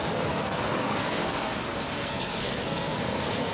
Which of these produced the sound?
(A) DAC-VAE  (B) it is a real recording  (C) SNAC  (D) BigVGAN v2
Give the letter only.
C